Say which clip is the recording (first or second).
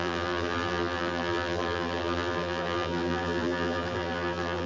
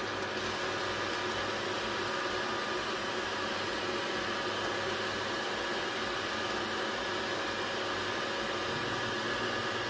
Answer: second